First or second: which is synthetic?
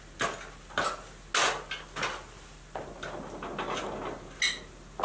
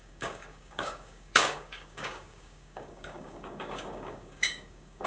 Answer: second